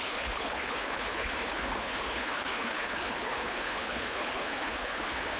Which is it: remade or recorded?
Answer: remade